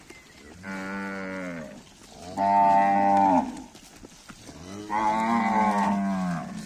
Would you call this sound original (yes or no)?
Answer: yes